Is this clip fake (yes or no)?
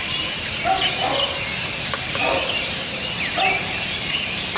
no